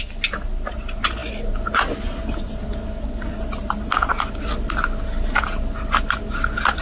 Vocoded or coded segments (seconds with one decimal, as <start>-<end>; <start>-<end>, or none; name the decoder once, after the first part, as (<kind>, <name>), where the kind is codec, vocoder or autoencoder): none